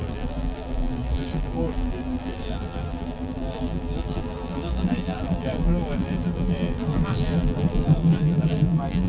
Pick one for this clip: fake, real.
fake